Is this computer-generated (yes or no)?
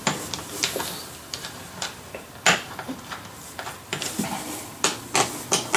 no